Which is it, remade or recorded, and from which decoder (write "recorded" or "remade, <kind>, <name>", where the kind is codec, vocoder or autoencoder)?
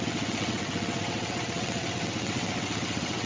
remade, vocoder, WaveNeXt